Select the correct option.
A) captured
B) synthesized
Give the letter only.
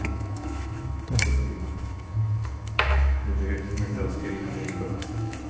B